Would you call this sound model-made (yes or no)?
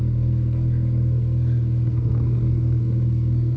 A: yes